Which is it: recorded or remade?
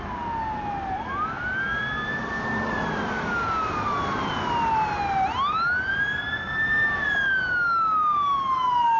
recorded